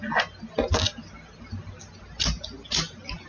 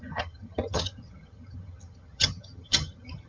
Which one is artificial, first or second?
second